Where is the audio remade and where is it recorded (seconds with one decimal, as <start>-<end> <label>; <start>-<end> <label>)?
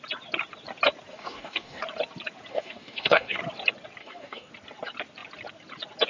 0.0-1.1 recorded; 1.1-1.8 remade; 1.8-2.5 recorded; 2.5-3.4 remade; 3.4-4.0 recorded; 4.0-4.5 remade; 4.5-6.1 recorded